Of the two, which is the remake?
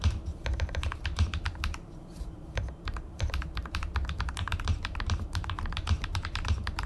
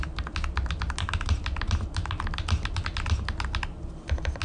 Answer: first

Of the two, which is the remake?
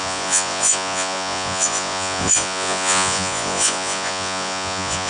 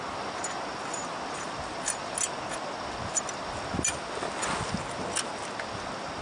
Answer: first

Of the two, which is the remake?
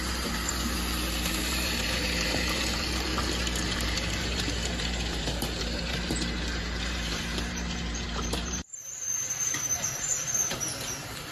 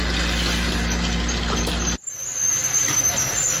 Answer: first